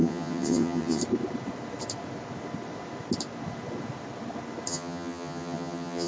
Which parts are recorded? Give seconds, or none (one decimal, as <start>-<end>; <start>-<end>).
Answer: 1.0-4.7

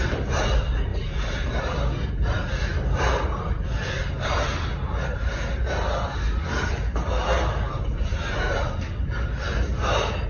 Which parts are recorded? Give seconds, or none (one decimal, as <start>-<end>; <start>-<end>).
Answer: 0.0-10.3